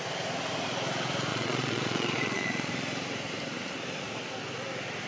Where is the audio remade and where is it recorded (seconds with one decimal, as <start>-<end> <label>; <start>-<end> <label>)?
0.0-1.3 recorded; 1.3-2.7 remade; 2.7-5.1 recorded